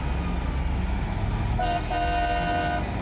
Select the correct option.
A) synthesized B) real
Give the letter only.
B